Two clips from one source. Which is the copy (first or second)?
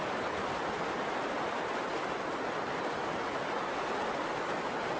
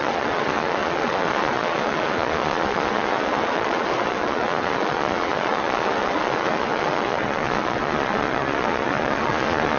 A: second